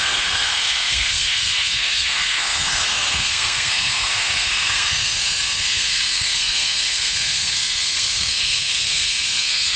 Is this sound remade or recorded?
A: remade